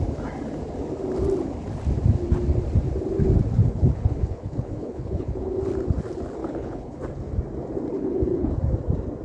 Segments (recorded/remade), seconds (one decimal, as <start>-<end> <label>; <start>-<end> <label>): 0.0-3.6 recorded; 3.6-5.6 remade; 5.6-6.4 recorded; 6.4-7.0 remade; 7.0-7.9 recorded; 7.9-8.5 remade; 8.5-9.2 recorded